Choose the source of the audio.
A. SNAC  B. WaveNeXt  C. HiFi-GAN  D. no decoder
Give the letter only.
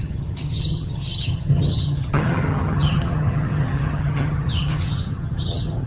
C